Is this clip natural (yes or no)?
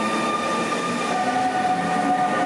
yes